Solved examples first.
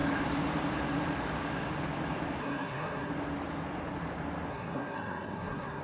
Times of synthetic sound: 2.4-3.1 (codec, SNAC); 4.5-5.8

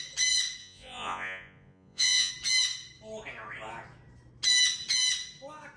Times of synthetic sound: 0.6-2.3 (vocoder, Vocos)

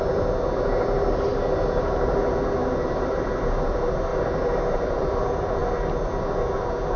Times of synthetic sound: none

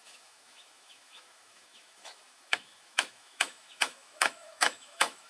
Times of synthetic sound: 0.0-5.3 (autoencoder, DAC-VAE)

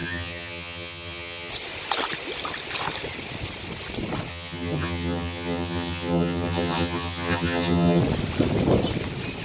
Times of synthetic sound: 0.0-1.5 (vocoder, HiFi-GAN); 4.3-8.0